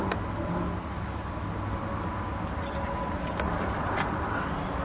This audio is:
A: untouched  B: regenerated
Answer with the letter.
A